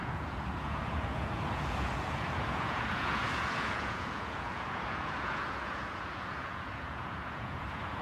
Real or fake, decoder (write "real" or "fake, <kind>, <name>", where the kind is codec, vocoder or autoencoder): fake, vocoder, Vocos